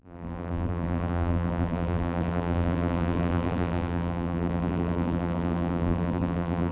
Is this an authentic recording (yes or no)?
no